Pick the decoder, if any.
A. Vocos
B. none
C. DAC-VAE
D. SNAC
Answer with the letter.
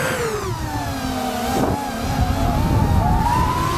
B